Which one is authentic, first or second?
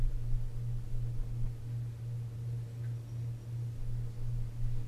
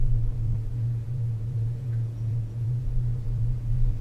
first